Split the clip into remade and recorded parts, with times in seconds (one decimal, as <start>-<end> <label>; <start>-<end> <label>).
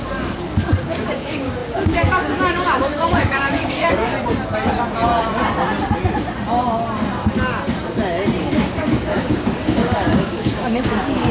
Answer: 0.0-0.8 recorded; 0.8-4.1 remade; 4.1-8.5 recorded; 8.5-11.3 remade